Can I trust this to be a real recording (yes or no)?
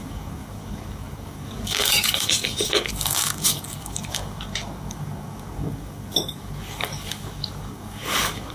no